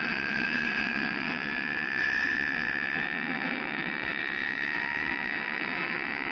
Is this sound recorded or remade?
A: remade